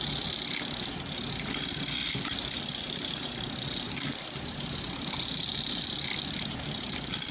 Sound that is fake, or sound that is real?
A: real